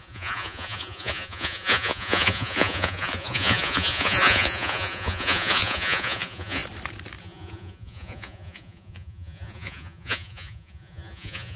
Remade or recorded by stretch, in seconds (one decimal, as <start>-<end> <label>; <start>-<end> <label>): 0.0-6.6 remade; 6.6-7.2 recorded; 7.2-11.6 remade